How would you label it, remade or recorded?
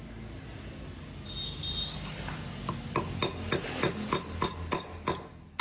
recorded